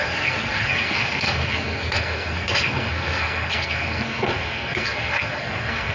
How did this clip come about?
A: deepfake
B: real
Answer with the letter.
A